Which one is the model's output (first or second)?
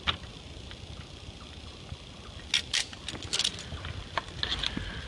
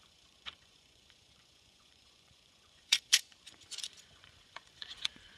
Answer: second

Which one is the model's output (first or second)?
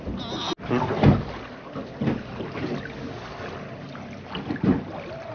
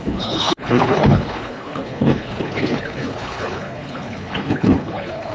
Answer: second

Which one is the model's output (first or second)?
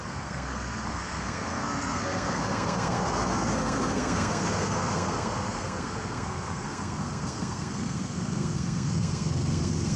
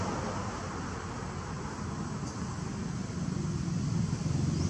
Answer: first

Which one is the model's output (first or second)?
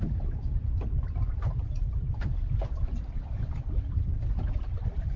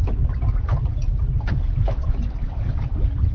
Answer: first